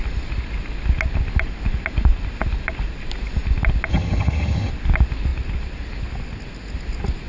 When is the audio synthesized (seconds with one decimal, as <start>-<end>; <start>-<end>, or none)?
3.9-4.7